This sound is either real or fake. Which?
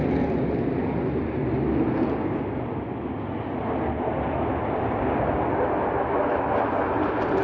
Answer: real